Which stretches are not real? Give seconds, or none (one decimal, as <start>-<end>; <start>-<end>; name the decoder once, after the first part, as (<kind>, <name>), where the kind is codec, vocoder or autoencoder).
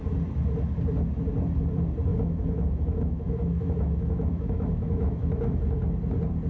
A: 2.1-5.6 (autoencoder, DAC-VAE)